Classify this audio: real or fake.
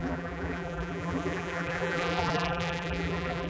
fake